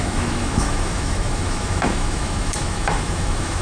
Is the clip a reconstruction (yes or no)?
yes